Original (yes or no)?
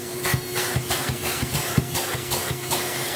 no